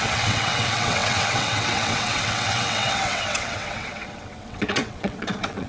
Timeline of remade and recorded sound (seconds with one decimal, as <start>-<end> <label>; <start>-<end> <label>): 0.0-5.7 remade